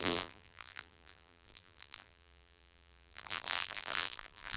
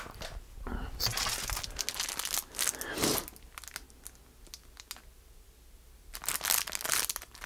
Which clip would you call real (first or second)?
second